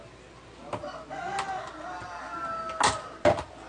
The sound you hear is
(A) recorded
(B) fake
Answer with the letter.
A